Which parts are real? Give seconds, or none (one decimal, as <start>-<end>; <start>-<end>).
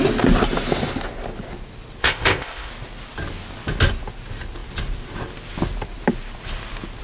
0.0-2.0; 2.7-7.0